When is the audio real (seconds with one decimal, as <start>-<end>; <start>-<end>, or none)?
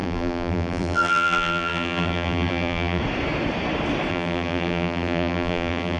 3.0-4.1